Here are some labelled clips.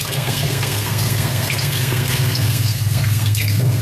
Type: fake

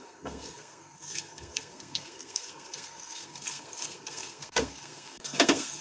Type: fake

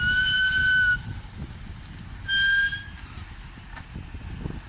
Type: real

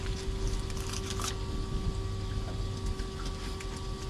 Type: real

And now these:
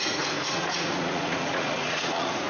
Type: fake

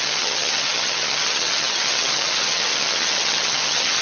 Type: fake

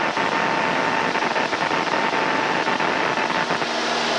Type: real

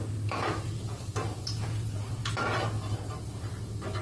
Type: real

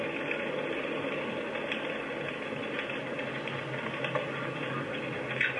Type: real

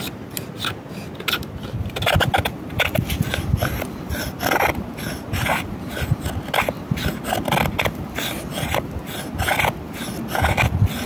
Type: real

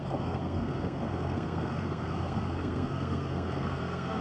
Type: fake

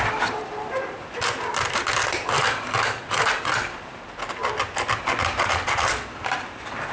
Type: real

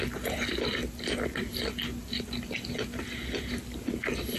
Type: real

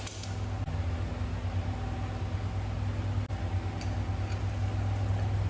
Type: real